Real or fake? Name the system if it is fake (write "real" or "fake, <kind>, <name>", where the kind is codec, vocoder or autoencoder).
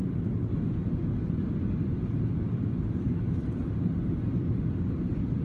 real